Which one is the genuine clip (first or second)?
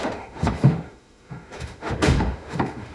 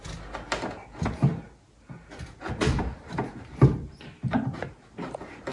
second